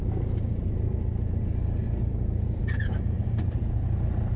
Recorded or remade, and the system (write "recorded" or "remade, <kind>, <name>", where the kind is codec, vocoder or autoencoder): recorded